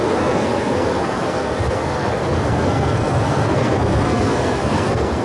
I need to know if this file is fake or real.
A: fake